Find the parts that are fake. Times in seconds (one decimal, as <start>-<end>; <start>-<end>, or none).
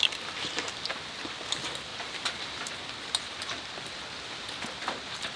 none